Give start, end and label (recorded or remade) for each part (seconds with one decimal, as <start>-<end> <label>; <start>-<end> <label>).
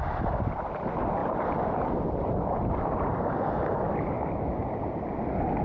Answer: 0.0-5.6 recorded